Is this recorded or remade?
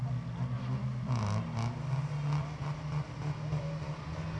recorded